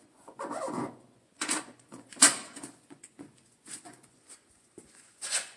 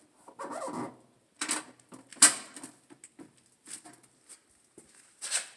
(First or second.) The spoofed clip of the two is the first